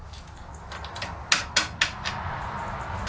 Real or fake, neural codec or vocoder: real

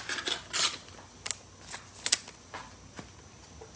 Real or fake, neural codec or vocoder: real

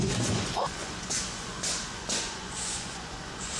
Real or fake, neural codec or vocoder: fake, vocoder, Vocos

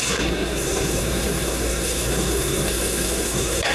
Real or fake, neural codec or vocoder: fake, codec, SNAC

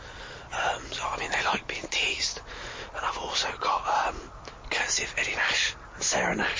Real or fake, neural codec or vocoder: real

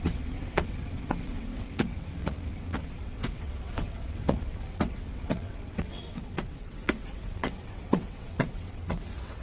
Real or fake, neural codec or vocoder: fake, vocoder, WaveNeXt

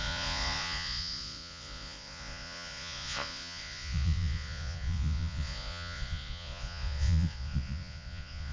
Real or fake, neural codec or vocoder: fake, vocoder, Vocos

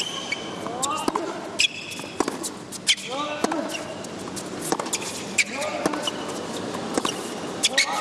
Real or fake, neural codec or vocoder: real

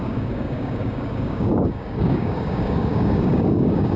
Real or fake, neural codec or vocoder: fake, codec, DAC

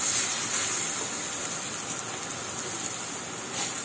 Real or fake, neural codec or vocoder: real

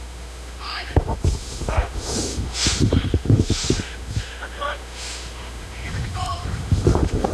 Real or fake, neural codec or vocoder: fake, autoencoder, DAC-VAE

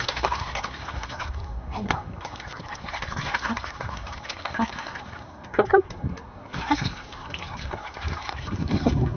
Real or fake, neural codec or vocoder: fake, codec, SNAC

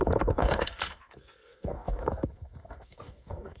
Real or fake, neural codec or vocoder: fake, codec, SNAC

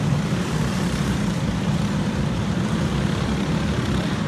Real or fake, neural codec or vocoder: fake, vocoder, BigVGAN v2